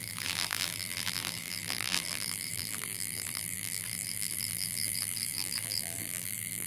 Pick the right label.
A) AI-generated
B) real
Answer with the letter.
A